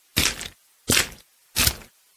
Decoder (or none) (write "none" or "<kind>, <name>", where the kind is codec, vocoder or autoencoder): none